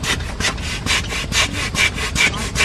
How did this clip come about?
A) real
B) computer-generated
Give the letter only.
A